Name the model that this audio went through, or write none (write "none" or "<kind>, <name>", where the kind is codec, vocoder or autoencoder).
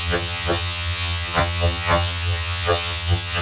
vocoder, HiFi-GAN